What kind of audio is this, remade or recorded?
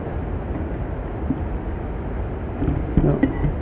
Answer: recorded